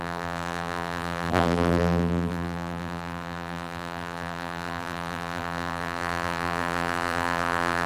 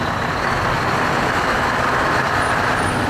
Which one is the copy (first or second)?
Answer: first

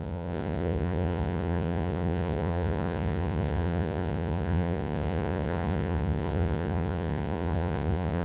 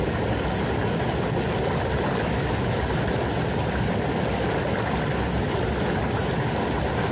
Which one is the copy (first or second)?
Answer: first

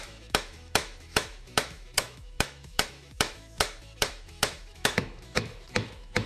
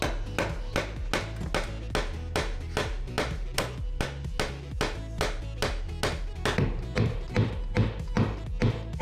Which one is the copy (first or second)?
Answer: first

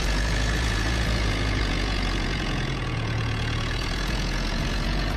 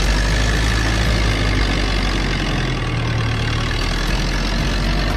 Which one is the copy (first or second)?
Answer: first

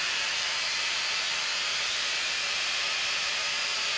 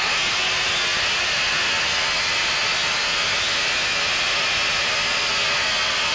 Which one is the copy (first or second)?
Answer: first